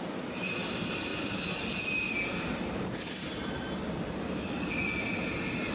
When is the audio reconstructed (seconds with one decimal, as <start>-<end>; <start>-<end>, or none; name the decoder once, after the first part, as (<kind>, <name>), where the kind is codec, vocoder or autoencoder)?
none